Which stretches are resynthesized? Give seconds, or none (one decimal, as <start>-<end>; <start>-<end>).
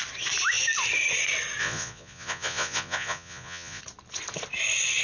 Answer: 1.6-3.8